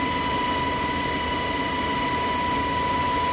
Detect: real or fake real